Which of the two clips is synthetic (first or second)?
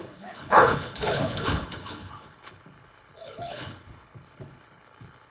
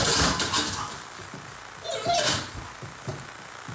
first